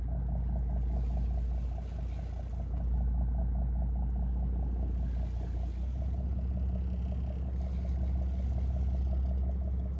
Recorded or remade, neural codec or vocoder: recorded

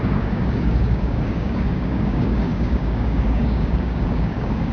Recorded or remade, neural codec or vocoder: remade, codec, DAC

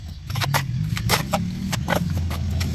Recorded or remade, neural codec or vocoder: remade, codec, DAC